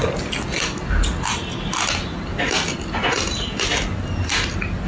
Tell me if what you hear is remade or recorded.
recorded